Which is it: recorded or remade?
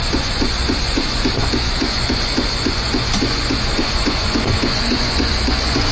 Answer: remade